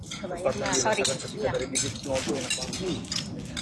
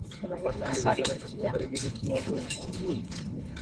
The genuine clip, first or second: first